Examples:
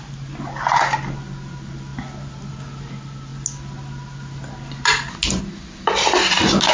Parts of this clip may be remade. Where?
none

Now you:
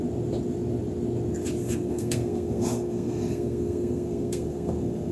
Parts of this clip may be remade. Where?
1.6-5.1

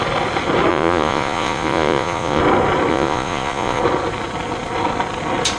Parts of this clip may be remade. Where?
0.7-2.4; 2.9-3.8